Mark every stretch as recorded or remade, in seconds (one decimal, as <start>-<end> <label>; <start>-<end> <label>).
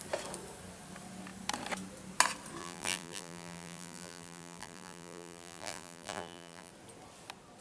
0.0-2.6 recorded; 2.6-6.7 remade; 6.7-7.6 recorded